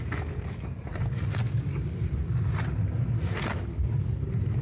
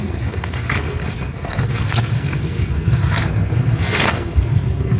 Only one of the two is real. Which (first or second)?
first